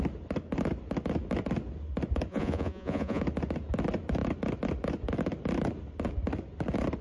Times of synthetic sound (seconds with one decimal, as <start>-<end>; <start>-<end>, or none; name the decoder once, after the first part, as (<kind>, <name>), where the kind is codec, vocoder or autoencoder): 2.3-3.2 (vocoder, Vocos)